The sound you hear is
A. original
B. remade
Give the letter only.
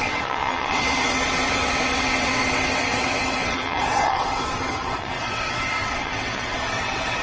B